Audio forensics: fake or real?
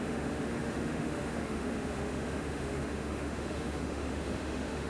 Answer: fake